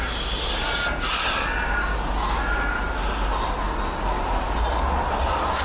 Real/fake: real